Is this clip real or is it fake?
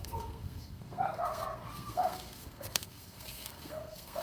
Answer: fake